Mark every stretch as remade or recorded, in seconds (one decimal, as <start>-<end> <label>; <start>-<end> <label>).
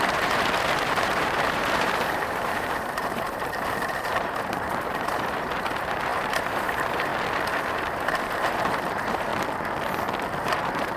0.0-7.1 remade; 7.1-7.7 recorded; 7.7-9.3 remade; 9.3-10.4 recorded; 10.4-11.0 remade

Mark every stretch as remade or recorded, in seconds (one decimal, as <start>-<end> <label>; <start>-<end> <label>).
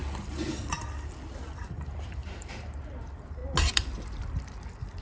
0.0-1.3 recorded; 1.3-3.4 remade; 3.4-5.0 recorded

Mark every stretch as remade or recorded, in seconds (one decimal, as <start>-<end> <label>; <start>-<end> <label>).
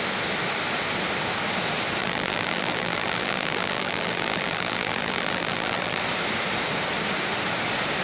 0.0-2.0 recorded; 2.0-6.0 remade; 6.0-8.0 recorded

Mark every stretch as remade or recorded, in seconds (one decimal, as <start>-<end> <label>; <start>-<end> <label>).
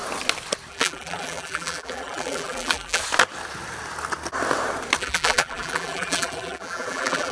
0.0-0.7 recorded; 0.7-3.0 remade; 3.0-5.0 recorded; 5.0-7.3 remade